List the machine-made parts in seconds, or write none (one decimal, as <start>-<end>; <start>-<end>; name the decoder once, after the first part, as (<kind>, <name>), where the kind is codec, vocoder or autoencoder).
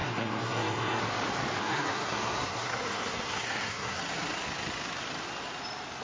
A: 0.0-1.0 (codec, SNAC); 1.6-4.0